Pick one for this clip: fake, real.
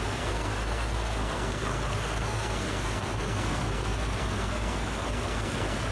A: fake